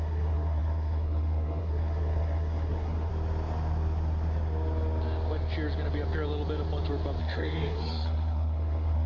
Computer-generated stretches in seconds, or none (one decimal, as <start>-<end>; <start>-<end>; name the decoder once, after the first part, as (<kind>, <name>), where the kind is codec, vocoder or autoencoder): 0.0-3.1 (codec, SNAC); 7.2-9.1